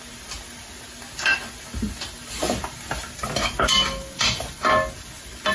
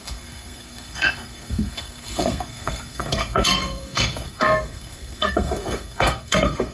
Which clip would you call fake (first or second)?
second